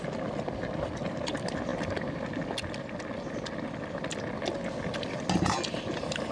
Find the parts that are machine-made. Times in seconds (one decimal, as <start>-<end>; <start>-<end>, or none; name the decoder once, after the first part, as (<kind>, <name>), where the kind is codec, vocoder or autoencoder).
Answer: none